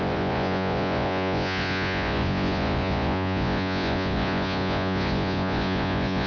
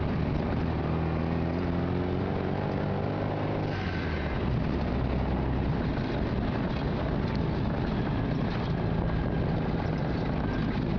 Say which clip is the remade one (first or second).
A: first